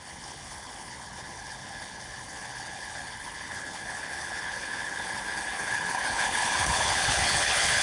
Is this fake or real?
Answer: fake